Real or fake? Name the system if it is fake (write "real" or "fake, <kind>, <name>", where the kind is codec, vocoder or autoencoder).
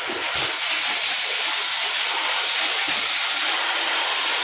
real